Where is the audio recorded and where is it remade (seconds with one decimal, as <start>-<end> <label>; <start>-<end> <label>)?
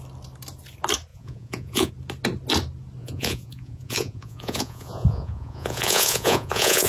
0.0-1.1 recorded; 1.1-1.9 remade; 1.9-3.0 recorded; 3.0-6.9 remade